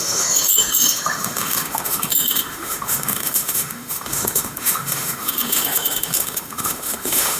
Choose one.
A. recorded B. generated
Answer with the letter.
B